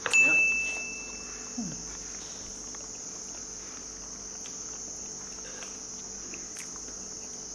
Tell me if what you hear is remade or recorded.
recorded